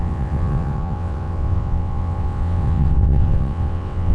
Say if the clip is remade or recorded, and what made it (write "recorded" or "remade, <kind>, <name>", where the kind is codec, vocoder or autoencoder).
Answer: remade, vocoder, WaveNeXt